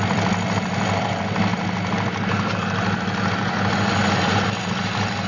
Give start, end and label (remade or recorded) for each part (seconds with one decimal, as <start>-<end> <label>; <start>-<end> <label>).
0.0-5.3 recorded